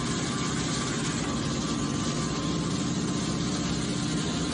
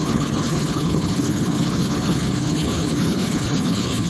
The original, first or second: first